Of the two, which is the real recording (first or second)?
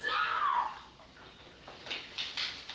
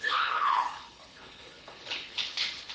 first